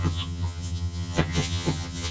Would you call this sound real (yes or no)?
no